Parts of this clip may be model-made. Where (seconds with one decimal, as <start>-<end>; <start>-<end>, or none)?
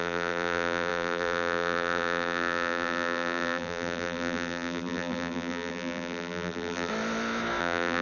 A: 0.0-6.9; 7.6-8.0